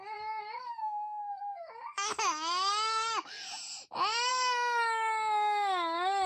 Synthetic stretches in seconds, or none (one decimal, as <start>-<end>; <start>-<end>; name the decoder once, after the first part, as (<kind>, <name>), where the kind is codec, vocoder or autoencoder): 0.0-3.5 (codec, DAC); 4.3-6.3